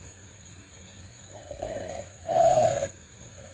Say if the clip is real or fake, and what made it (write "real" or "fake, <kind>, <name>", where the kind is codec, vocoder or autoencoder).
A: fake, codec, SNAC